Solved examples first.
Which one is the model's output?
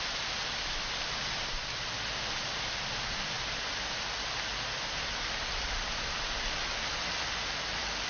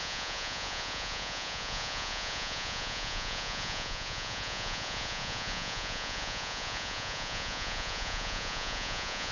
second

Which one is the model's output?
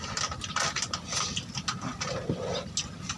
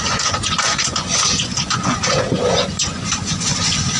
second